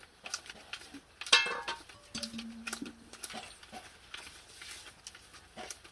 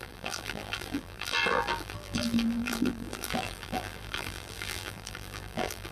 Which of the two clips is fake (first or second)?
second